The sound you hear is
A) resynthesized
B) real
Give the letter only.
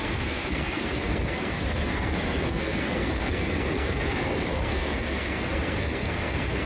A